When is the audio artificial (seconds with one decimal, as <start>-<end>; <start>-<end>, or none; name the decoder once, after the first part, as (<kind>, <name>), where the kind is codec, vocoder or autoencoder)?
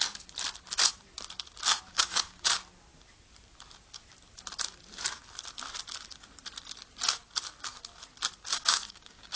1.9-2.5 (codec, DAC); 8.5-9.4